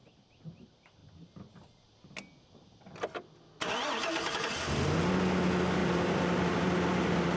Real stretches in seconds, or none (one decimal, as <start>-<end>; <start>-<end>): 0.0-5.8; 7.0-7.4